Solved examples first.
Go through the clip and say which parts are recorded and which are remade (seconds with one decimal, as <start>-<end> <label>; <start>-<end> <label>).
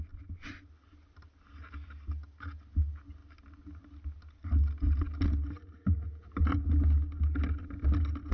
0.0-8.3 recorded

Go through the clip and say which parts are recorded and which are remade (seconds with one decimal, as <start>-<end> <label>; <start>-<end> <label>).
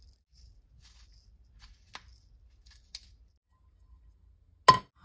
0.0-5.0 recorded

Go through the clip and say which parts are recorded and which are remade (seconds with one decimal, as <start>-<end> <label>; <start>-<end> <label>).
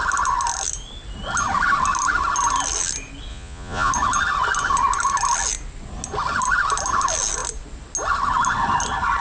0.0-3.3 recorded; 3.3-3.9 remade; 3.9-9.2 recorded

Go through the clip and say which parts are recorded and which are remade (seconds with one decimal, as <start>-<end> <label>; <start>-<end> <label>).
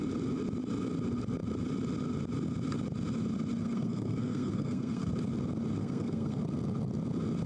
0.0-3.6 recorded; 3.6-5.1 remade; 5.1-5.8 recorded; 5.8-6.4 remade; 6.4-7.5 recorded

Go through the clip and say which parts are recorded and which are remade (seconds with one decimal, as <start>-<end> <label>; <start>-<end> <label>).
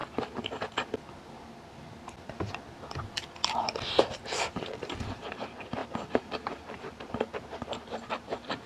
0.0-4.0 recorded; 4.0-8.7 remade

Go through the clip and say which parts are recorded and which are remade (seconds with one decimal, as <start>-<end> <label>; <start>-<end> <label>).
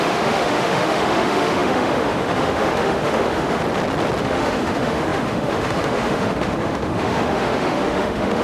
0.0-3.6 remade; 3.6-4.2 recorded; 4.2-8.4 remade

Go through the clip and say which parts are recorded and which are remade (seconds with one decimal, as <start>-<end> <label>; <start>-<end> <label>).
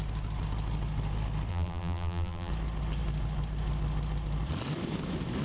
0.0-1.5 recorded; 1.5-2.5 remade; 2.5-5.4 recorded